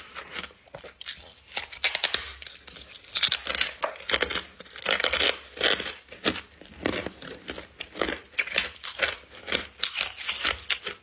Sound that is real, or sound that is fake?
real